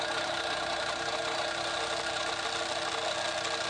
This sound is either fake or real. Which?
real